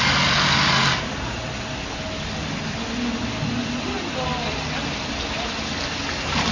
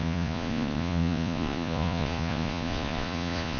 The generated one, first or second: second